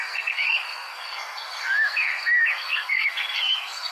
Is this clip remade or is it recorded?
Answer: remade